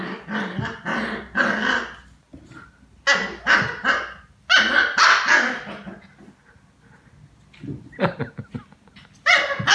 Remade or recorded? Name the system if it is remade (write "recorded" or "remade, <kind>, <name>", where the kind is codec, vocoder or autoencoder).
recorded